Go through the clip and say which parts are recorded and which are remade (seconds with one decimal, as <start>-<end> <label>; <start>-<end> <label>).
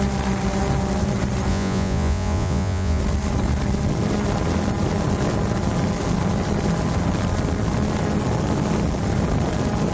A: 0.0-1.5 recorded; 1.5-3.0 remade; 3.0-9.9 recorded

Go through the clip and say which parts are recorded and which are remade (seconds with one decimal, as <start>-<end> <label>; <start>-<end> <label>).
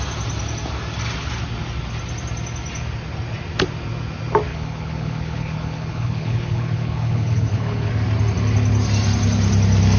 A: 0.0-4.5 recorded; 4.5-7.9 remade; 7.9-10.0 recorded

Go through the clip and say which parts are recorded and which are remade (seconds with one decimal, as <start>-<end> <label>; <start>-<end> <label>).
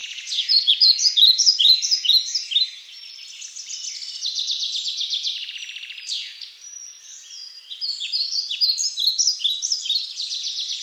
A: 0.0-2.3 remade; 2.3-10.8 recorded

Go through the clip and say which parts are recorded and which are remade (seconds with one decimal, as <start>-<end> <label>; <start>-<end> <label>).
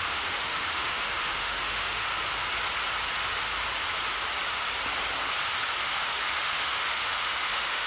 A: 0.0-2.1 remade; 2.1-5.8 recorded; 5.8-7.9 remade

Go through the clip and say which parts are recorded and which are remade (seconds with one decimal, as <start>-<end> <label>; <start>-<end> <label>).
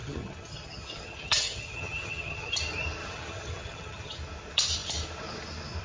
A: 0.0-2.6 remade; 2.6-3.0 recorded; 3.0-4.2 remade; 4.2-5.8 recorded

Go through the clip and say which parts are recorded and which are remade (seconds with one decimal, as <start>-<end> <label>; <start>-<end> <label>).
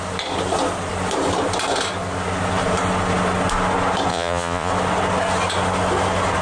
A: 0.0-4.1 recorded; 4.1-4.7 remade; 4.7-6.4 recorded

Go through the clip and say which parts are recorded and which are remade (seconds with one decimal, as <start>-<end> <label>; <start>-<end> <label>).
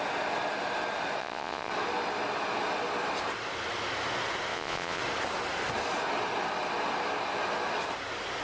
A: 0.0-1.2 recorded; 1.2-1.7 remade; 1.7-4.5 recorded; 4.5-5.0 remade; 5.0-8.4 recorded